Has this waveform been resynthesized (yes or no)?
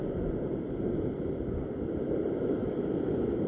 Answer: no